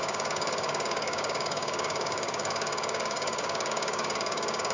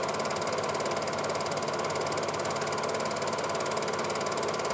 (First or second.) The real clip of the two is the second